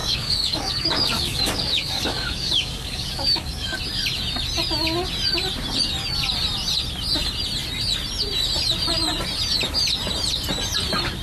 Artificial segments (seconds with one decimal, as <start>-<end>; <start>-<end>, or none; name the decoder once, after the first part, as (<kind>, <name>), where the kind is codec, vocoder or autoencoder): 0.0-3.8 (codec, DAC)